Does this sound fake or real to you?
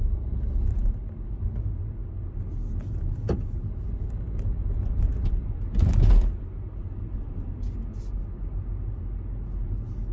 real